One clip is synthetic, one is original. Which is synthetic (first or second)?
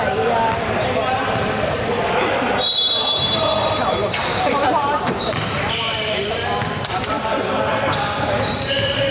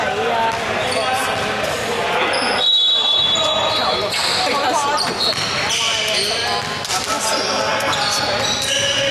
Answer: first